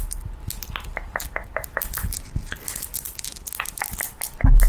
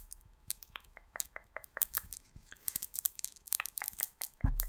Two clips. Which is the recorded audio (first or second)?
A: first